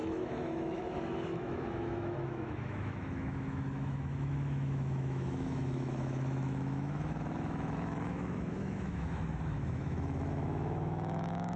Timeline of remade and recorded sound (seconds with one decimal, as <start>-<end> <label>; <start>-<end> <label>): 0.0-11.6 remade